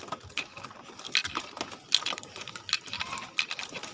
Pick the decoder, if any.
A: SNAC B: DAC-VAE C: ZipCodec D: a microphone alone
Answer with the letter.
D